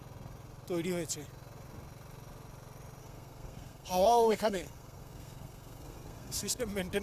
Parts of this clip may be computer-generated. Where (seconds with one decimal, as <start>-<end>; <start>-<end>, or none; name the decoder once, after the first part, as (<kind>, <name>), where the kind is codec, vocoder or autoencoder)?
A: 3.0-6.6 (codec, SNAC)